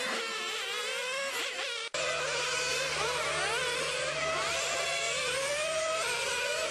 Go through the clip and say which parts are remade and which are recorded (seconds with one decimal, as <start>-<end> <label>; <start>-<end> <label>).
0.0-0.8 recorded; 0.8-2.0 remade; 2.0-2.7 recorded; 2.7-6.7 remade